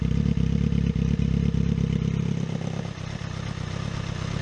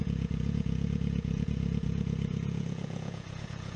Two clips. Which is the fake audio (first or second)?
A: second